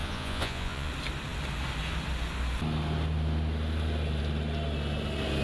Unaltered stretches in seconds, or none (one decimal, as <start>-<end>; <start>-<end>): 0.9-5.4